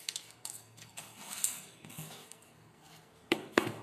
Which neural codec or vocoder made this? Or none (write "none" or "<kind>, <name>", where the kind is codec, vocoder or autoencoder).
codec, SNAC